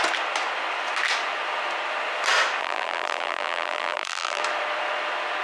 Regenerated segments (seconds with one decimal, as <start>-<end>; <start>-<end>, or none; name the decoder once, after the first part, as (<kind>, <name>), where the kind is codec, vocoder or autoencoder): 2.6-4.4 (vocoder, BigVGAN v2)